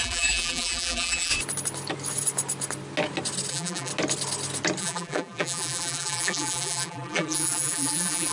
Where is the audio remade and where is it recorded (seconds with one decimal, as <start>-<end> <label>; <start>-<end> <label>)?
0.0-1.3 remade; 1.3-3.5 recorded; 3.5-3.9 remade; 3.9-4.8 recorded; 4.8-8.3 remade